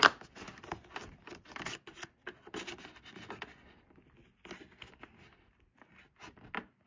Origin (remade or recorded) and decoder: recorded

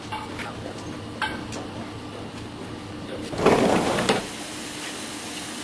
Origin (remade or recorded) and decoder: recorded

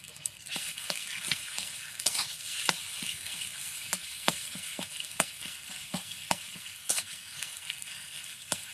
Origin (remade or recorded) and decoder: remade, codec, SNAC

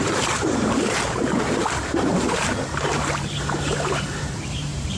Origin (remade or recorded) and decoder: remade, vocoder, BigVGAN v2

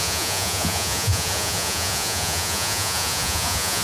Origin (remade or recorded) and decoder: remade, vocoder, Vocos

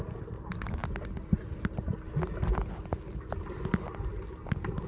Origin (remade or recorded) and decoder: recorded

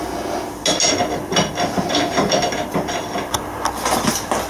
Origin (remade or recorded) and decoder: recorded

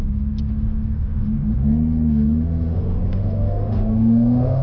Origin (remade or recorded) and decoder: remade, autoencoder, DAC-VAE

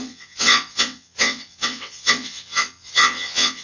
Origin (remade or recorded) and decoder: remade, vocoder, WaveNeXt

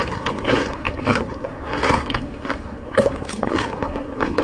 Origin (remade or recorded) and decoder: remade, codec, SNAC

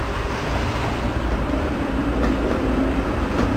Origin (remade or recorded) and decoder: recorded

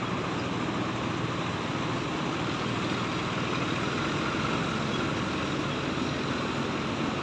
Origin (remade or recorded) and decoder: recorded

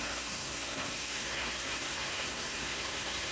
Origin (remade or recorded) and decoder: remade, codec, SNAC